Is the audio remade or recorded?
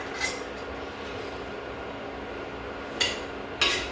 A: recorded